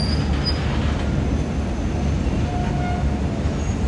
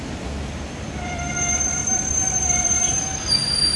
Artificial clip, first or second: second